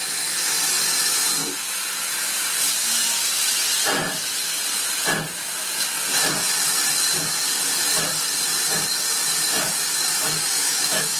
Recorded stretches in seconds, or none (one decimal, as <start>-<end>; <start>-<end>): 0.0-10.5